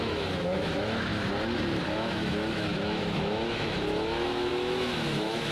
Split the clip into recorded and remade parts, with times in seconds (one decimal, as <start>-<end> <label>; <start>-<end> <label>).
0.0-1.1 remade; 1.1-1.8 recorded; 1.8-5.5 remade